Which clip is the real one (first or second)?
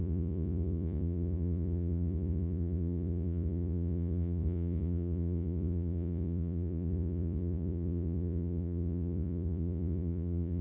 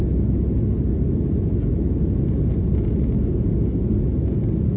second